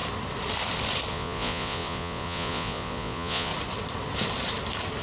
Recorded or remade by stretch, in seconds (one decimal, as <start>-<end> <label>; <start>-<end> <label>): 0.0-1.1 recorded; 1.1-3.5 remade; 3.5-5.0 recorded